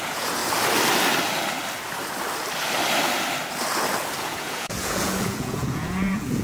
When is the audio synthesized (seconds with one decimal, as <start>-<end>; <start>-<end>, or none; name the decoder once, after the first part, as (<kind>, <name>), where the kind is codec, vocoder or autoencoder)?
0.0-0.4 (vocoder, Vocos); 4.2-6.4